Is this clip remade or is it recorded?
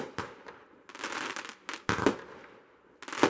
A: recorded